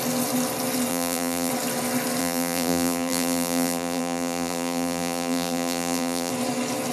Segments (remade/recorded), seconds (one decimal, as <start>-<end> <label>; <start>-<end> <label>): 0.0-0.9 recorded; 0.9-1.5 remade; 1.5-2.2 recorded; 2.2-6.3 remade; 6.3-6.9 recorded